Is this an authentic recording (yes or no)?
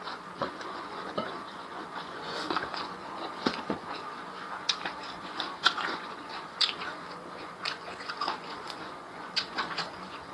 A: no